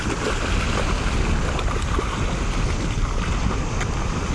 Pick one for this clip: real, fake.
real